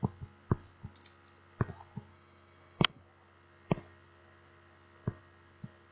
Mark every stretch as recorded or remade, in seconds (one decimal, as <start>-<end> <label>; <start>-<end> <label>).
0.0-2.1 recorded; 2.1-3.0 remade; 3.0-5.9 recorded